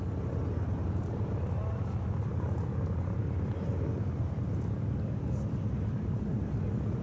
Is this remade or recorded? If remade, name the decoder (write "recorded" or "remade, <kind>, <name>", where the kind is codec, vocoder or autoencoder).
recorded